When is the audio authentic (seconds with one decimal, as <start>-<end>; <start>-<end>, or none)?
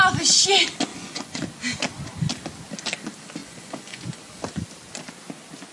0.0-0.9; 1.4-3.4; 4.4-5.7